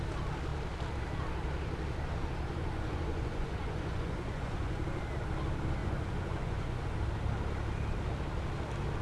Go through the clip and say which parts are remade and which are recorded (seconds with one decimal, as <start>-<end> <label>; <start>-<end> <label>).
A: 0.0-2.5 recorded; 2.5-4.8 remade; 4.8-5.8 recorded; 5.8-6.9 remade; 6.9-9.0 recorded